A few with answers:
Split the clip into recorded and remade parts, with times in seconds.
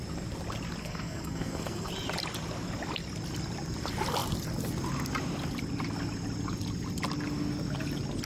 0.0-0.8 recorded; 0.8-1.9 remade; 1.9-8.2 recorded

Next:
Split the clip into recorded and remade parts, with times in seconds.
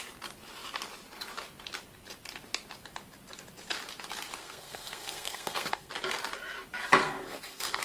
0.0-4.4 recorded; 4.4-5.9 remade; 5.9-7.0 recorded; 7.0-7.8 remade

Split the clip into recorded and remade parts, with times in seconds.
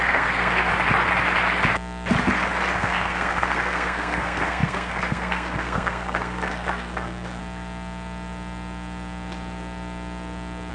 0.0-0.7 remade; 0.7-2.7 recorded; 2.7-7.4 remade; 7.4-10.7 recorded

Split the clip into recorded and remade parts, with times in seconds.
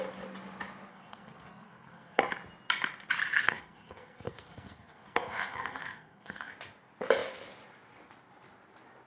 0.0-0.9 recorded; 0.9-2.2 remade; 2.2-3.4 recorded; 3.4-6.5 remade; 6.5-9.1 recorded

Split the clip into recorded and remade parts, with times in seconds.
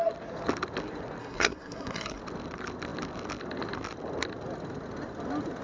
0.0-1.2 recorded; 1.2-2.2 remade; 2.2-5.6 recorded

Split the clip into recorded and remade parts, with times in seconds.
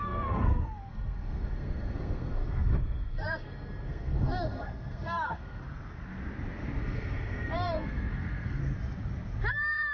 0.0-5.6 remade; 5.6-6.8 recorded; 6.8-8.6 remade; 8.6-9.5 recorded; 9.5-9.9 remade